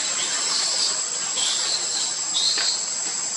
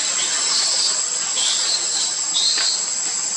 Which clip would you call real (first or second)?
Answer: second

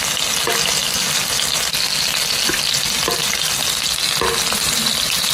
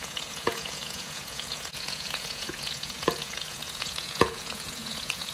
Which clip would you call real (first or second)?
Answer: first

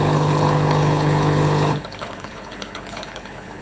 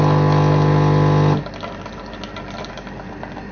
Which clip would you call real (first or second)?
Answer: second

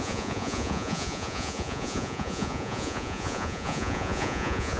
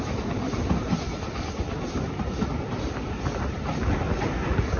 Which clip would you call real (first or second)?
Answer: second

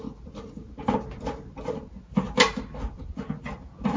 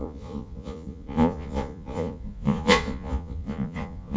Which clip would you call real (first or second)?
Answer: first